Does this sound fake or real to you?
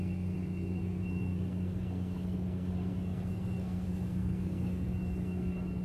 fake